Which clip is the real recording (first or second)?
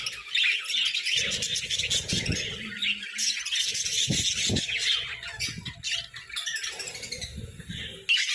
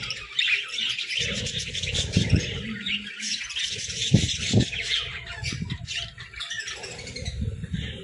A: first